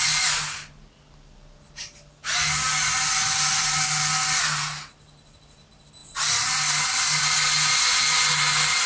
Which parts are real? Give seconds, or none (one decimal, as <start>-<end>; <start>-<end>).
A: 0.0-8.9